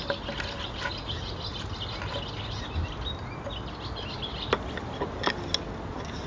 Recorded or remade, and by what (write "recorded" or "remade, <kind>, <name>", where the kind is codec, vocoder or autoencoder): recorded